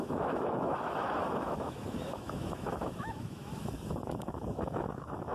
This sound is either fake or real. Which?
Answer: fake